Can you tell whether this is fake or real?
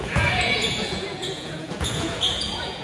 fake